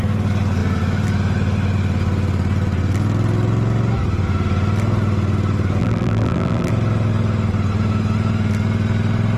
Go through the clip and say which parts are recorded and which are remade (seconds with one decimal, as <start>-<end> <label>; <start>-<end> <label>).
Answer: 0.0-5.8 recorded; 5.8-6.7 remade; 6.7-9.4 recorded